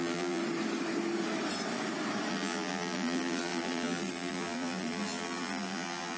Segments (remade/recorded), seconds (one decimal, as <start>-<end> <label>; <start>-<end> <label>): 0.0-0.4 remade; 0.4-2.3 recorded; 2.3-6.2 remade